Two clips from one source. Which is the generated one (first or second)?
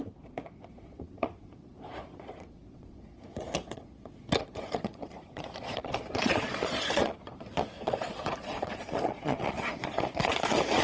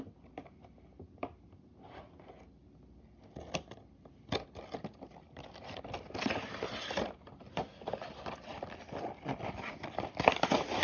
first